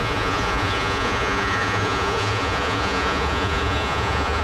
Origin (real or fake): fake